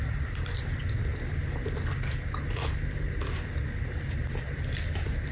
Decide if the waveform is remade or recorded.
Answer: recorded